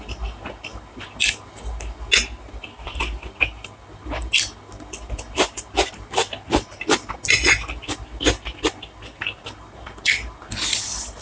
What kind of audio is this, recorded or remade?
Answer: recorded